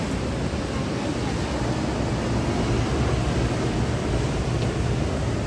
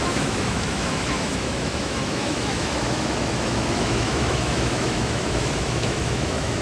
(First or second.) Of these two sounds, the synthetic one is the second